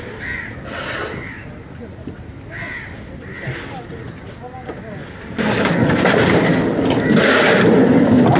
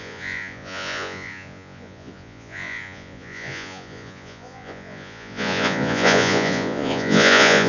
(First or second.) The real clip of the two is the first